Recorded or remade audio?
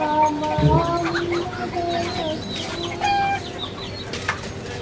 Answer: recorded